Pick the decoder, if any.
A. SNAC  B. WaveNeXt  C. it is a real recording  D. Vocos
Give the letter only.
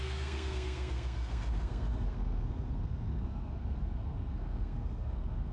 A